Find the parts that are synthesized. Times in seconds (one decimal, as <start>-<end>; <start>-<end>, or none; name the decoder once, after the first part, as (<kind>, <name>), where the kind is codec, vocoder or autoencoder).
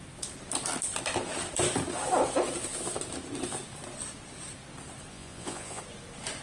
5.1-5.8 (vocoder, Vocos)